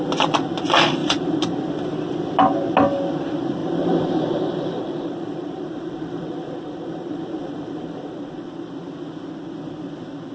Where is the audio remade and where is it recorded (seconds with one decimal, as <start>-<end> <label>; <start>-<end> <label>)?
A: 0.0-1.0 recorded; 1.0-1.9 remade; 1.9-3.6 recorded; 3.6-8.5 remade; 8.5-10.3 recorded